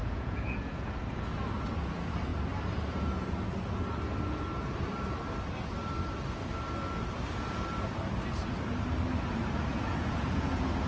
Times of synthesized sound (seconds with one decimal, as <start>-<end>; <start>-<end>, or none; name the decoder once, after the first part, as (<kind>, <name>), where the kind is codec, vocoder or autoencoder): 0.0-0.9 (vocoder, Vocos); 9.7-10.9